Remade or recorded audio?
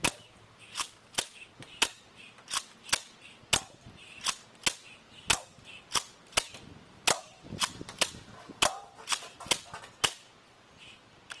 recorded